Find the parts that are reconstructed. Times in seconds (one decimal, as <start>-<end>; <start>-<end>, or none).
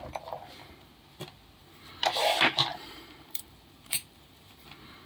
1.6-2.2; 2.7-5.1